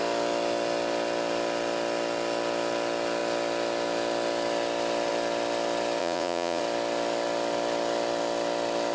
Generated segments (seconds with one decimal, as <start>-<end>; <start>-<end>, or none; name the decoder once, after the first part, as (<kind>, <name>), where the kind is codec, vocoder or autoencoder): 6.0-6.6 (vocoder, Vocos)

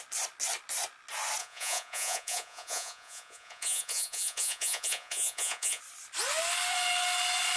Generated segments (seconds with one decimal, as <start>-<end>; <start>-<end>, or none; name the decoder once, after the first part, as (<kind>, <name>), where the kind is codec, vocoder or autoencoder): 1.4-5.8 (vocoder, Vocos)

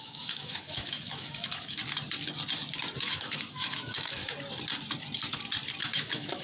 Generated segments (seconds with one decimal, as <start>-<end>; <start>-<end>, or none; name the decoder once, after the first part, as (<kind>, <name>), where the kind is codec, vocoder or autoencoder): 0.0-1.8 (autoencoder, DAC-VAE); 3.0-4.2; 5.8-6.4

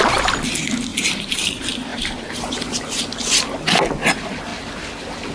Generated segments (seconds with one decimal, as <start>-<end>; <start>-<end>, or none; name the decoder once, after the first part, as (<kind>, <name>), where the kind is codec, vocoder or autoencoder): 0.9-1.5 (vocoder, BigVGAN v2); 1.9-3.0

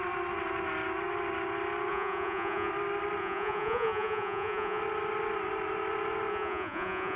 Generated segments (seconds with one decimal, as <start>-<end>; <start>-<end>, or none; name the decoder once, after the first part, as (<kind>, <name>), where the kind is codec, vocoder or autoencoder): 1.9-2.7 (vocoder, Vocos); 3.2-4.8; 6.3-7.2

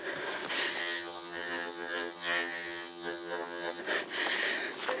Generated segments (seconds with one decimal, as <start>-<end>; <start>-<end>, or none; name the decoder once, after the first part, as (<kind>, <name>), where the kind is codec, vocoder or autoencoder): 0.8-3.8 (vocoder, HiFi-GAN)

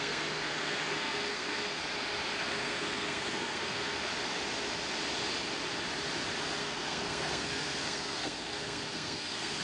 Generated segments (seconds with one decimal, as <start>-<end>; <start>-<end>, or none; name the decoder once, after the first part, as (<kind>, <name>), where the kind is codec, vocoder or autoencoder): 0.0-1.8 (codec, SNAC); 2.4-4.1; 6.6-9.6

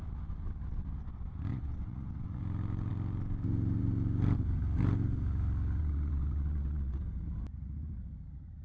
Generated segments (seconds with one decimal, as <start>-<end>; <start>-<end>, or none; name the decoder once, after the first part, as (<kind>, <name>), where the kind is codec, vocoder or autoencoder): 1.5-2.4 (vocoder, WaveNeXt); 5.8-7.0